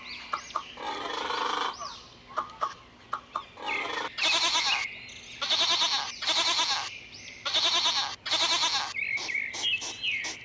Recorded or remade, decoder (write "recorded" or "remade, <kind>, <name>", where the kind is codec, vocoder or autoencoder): recorded